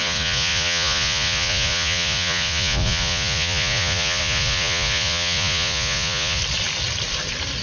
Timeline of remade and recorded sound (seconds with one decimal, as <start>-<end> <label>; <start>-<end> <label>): 0.0-6.4 remade; 6.4-7.6 recorded